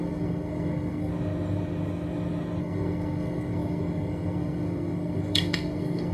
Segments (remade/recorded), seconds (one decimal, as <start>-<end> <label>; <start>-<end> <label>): 0.0-1.1 remade; 1.1-2.6 recorded; 2.6-6.1 remade